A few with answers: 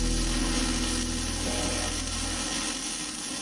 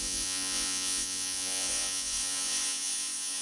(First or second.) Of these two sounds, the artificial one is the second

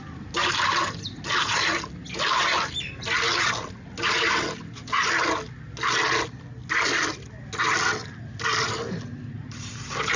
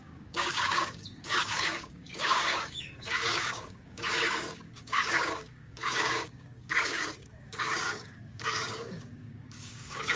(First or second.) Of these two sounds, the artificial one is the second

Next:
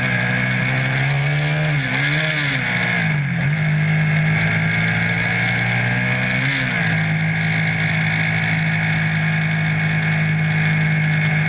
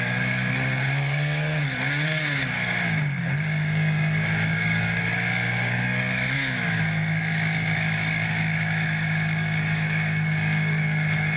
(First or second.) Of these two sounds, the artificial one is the second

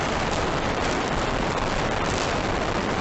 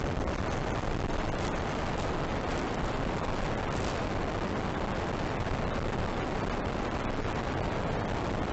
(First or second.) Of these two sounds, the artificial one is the first